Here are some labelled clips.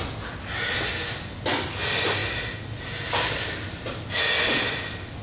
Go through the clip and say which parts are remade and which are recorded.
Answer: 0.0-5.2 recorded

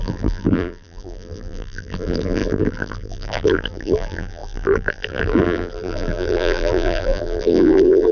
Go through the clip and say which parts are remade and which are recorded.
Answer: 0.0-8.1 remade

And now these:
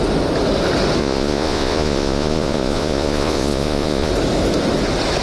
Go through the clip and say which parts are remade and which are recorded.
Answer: 0.0-1.0 recorded; 1.0-4.1 remade; 4.1-5.2 recorded

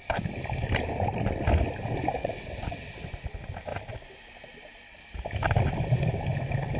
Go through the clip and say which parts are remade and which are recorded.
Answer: 0.0-2.2 recorded; 2.2-2.9 remade; 2.9-6.8 recorded

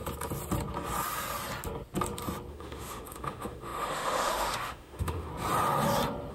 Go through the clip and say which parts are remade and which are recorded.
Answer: 0.0-2.5 recorded; 2.5-5.3 remade; 5.3-6.3 recorded